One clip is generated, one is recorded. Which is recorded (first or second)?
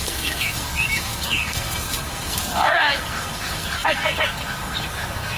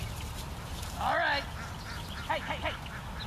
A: second